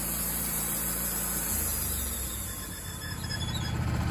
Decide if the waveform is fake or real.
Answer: fake